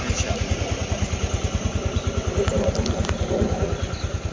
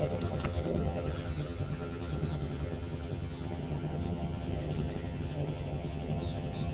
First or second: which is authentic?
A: first